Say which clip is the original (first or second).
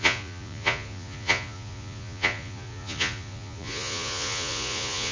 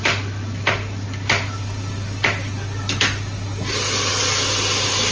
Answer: second